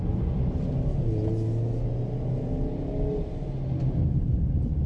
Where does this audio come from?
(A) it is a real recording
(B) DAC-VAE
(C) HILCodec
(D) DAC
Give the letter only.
A